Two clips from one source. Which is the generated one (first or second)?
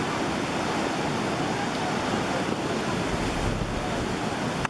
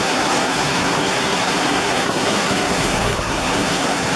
second